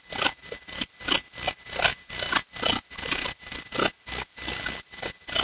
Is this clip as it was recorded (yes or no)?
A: yes